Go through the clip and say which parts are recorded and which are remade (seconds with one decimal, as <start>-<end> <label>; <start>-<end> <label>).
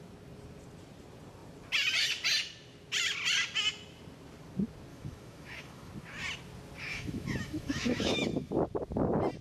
0.0-4.9 recorded; 4.9-5.9 remade; 5.9-6.9 recorded; 6.9-8.5 remade; 8.5-9.4 recorded